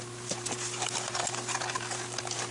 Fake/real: real